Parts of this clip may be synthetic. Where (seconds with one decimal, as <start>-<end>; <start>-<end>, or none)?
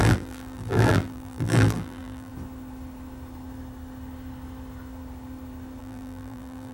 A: 0.0-2.3; 5.8-6.7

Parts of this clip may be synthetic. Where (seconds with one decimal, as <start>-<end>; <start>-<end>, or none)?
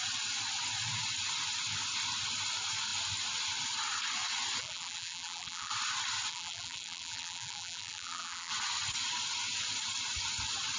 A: 4.6-5.7; 6.3-8.5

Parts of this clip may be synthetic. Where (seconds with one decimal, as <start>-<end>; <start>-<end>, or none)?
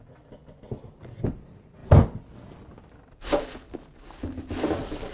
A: none